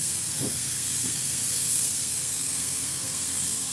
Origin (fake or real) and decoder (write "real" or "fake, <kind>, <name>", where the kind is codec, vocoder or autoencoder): fake, codec, SNAC